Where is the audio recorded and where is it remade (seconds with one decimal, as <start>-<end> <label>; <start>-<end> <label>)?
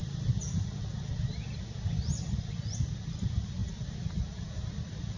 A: 0.0-5.2 recorded